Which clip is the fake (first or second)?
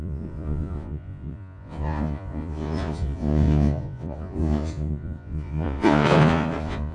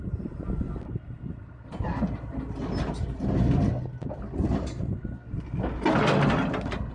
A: first